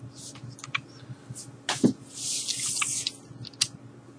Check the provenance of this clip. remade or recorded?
recorded